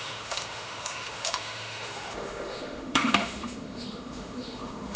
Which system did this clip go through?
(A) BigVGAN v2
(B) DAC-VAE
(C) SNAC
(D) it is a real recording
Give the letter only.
B